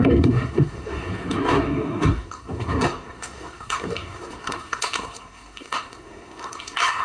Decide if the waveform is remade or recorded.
remade